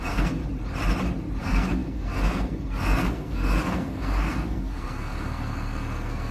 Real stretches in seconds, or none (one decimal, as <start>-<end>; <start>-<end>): 0.4-1.4